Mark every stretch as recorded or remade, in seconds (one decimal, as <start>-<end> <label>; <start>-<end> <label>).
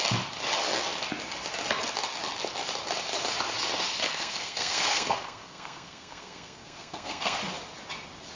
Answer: 0.0-4.1 recorded; 4.1-7.4 remade; 7.4-8.4 recorded